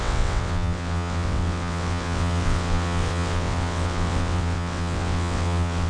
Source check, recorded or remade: remade